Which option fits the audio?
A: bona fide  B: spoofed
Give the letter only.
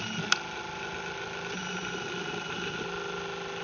A